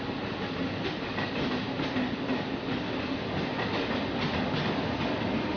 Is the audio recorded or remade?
recorded